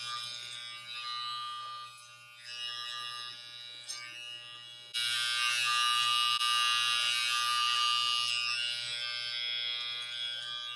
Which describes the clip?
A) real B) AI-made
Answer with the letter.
A